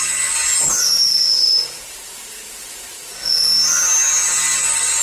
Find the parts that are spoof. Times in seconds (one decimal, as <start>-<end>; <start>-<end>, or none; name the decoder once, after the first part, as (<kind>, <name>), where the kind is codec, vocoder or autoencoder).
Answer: none